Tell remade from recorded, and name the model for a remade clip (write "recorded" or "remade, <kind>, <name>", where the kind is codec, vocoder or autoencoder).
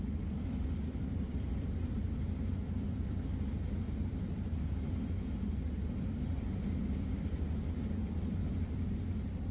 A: remade, vocoder, BigVGAN v2